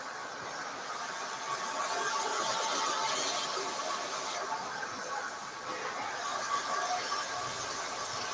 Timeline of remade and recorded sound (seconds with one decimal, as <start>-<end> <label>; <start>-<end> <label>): 0.0-6.3 recorded; 6.3-7.1 remade; 7.1-8.3 recorded